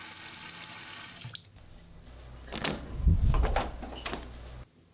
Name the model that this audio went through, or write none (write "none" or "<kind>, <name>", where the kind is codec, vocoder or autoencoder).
none